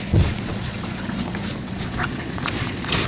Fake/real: fake